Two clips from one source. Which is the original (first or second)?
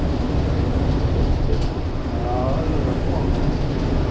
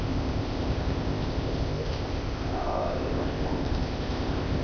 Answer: first